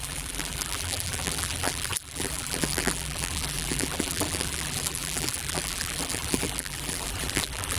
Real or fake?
fake